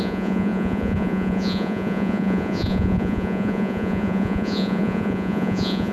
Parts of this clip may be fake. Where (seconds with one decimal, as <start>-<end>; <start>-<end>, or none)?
0.0-5.9